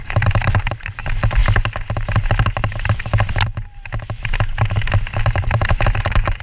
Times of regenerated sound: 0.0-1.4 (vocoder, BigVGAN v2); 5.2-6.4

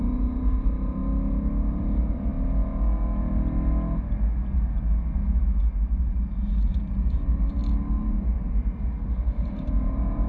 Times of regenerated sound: 0.0-1.0 (vocoder, BigVGAN v2); 1.7-2.3; 6.0-7.6; 8.1-10.3

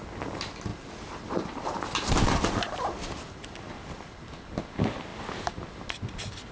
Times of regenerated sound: 0.7-4.6 (vocoder, BigVGAN v2)

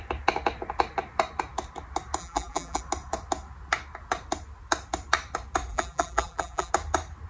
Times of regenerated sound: 2.2-2.8 (vocoder, BigVGAN v2); 5.7-6.7

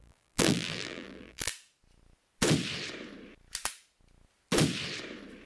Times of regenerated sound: 0.0-1.5 (vocoder, BigVGAN v2)

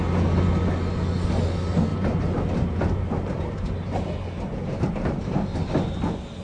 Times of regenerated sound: 1.9-5.7 (vocoder, BigVGAN v2)

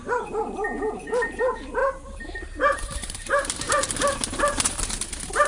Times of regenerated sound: 1.8-3.9 (vocoder, BigVGAN v2)

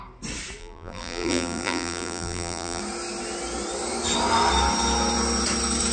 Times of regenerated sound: 0.6-2.8 (vocoder, BigVGAN v2)